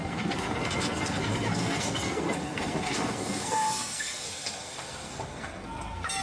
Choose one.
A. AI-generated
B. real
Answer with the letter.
A